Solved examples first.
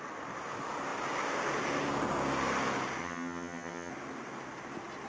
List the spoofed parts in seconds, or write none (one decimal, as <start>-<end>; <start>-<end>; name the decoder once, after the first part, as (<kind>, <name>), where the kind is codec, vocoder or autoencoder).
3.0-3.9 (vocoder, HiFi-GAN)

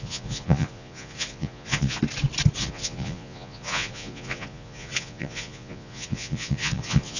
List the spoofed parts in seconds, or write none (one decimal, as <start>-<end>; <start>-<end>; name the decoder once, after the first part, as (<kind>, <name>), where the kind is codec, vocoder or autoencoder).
0.0-2.0 (vocoder, Vocos); 2.6-7.2

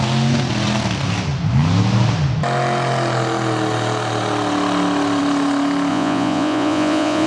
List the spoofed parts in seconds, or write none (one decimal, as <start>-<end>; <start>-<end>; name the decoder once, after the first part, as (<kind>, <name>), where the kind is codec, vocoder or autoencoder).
5.9-7.3 (vocoder, Vocos)

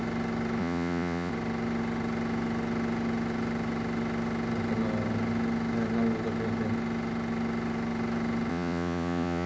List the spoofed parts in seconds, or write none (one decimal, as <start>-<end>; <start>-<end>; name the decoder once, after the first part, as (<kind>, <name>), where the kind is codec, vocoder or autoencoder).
0.6-1.3 (vocoder, Vocos); 8.5-9.5

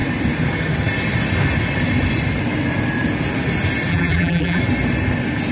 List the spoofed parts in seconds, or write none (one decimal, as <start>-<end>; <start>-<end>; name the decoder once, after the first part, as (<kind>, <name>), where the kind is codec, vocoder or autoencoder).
3.9-4.6 (vocoder, BigVGAN v2)

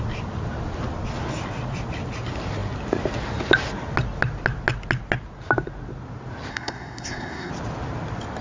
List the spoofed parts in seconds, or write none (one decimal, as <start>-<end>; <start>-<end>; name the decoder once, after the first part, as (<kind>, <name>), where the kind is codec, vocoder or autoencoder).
6.5-7.5 (codec, SNAC)